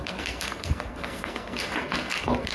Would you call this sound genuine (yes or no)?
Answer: no